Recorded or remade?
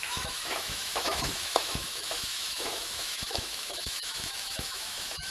remade